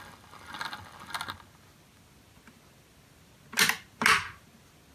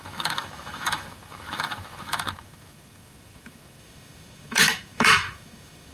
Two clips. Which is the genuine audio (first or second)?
first